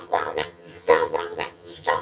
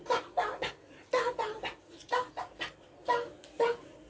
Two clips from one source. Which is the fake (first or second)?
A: first